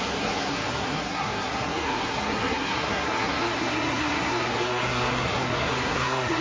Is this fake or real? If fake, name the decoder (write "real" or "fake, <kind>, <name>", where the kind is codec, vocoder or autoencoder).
fake, codec, SNAC